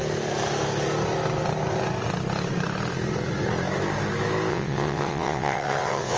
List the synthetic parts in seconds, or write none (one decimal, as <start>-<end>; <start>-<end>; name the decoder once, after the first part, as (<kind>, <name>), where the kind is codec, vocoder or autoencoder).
4.5-6.2 (vocoder, WaveNeXt)